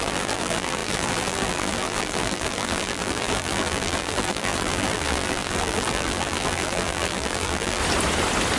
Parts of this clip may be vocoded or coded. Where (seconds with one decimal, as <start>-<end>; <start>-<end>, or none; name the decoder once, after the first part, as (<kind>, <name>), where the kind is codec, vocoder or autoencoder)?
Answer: 0.0-7.8 (vocoder, BigVGAN v2)